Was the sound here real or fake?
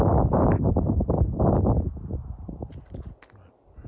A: real